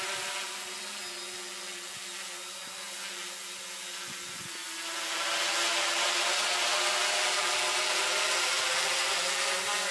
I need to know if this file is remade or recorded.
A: recorded